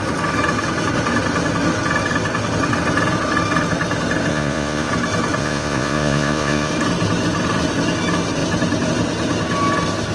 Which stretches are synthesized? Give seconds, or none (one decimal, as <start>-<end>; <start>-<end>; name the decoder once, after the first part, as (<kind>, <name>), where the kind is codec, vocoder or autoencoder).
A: 4.3-4.9 (vocoder, Vocos); 5.4-6.7